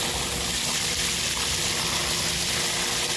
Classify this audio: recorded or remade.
recorded